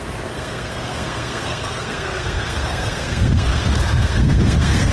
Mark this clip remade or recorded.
remade